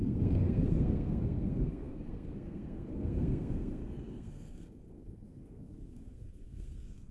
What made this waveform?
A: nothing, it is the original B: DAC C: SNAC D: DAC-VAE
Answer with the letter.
C